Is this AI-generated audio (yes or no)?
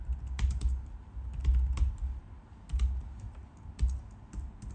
no